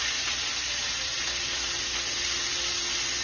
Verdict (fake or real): real